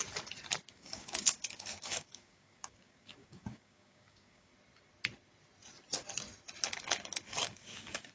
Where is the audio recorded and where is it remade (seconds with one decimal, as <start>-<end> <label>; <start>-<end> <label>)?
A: 0.0-0.7 recorded; 0.7-4.5 remade; 4.5-7.3 recorded; 7.3-8.1 remade